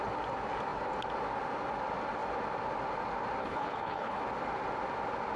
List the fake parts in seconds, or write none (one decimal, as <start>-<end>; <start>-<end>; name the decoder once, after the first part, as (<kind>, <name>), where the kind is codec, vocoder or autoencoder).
3.4-4.2 (codec, HILCodec)

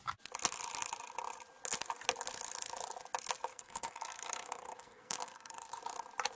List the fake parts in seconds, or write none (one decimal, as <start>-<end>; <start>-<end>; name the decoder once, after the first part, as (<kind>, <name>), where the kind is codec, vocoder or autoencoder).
3.5-5.8 (codec, SNAC)

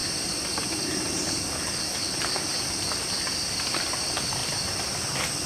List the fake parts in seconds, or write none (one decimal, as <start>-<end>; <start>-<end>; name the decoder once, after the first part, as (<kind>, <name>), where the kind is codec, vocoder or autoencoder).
2.5-3.3 (vocoder, BigVGAN v2); 4.4-5.5

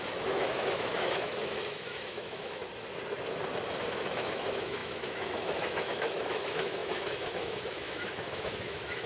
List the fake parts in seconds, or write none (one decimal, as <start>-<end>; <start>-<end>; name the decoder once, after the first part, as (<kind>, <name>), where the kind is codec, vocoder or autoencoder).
0.0-2.6 (autoencoder, DAC-VAE); 3.9-9.1

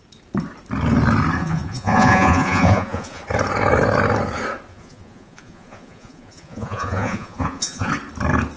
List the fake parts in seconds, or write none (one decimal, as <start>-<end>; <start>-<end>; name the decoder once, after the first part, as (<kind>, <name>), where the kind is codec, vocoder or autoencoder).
1.4-3.2 (vocoder, Vocos); 4.7-7.9